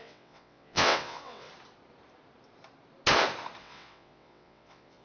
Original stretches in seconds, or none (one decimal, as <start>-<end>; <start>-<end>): 1.5-3.6